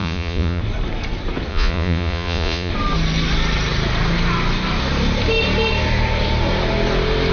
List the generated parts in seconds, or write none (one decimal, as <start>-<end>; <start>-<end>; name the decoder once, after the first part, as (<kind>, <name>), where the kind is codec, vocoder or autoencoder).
0.0-0.6 (vocoder, Vocos); 1.5-2.7